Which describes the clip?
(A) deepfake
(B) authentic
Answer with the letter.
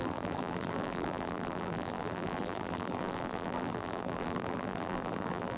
A